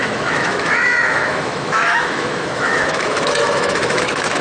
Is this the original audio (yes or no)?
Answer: no